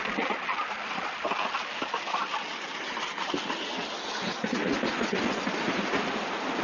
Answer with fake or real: real